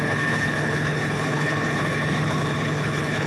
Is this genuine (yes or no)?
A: no